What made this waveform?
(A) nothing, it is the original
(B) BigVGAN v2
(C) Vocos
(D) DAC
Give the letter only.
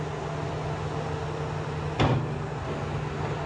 A